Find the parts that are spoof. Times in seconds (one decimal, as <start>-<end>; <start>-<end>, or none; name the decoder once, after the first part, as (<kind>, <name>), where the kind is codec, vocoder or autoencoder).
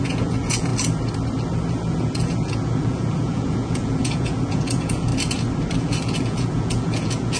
0.0-0.7 (vocoder, Vocos); 1.7-5.1; 5.8-7.4